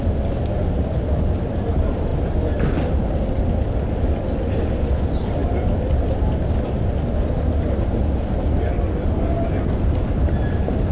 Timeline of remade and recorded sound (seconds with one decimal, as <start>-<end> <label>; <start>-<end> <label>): 0.0-10.9 recorded